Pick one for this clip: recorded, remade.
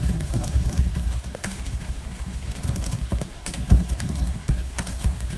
remade